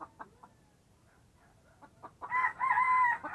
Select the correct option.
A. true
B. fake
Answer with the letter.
A